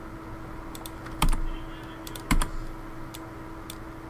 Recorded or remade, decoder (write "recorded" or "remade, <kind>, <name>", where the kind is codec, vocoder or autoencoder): recorded